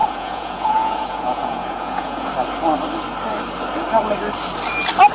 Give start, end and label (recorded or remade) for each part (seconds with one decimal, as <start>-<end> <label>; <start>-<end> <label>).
0.0-2.3 remade; 2.3-5.1 recorded